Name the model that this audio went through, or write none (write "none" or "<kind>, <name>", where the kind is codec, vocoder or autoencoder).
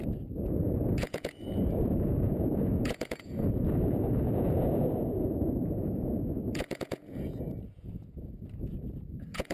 vocoder, Vocos